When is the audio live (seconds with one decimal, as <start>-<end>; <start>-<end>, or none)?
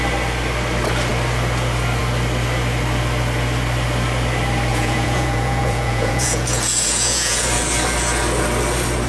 0.0-4.7; 7.4-9.1